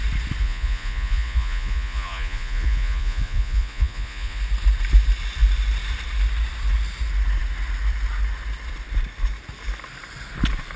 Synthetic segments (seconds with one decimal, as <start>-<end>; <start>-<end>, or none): 0.4-4.4